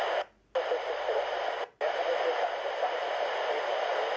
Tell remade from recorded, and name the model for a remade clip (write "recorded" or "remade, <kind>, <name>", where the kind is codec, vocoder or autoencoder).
recorded